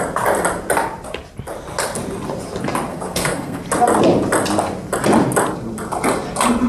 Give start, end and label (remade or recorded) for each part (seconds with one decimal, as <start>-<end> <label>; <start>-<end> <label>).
0.0-2.9 recorded; 2.9-3.6 remade; 3.6-6.7 recorded